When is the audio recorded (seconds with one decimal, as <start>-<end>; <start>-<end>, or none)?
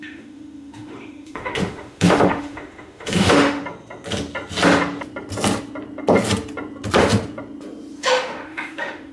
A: 3.6-8.0